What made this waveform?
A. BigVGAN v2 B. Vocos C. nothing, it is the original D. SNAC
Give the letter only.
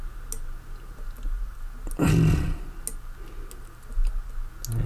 C